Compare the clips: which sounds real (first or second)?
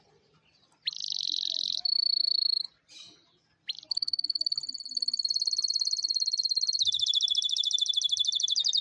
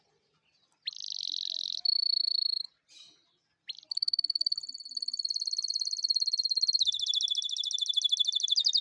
second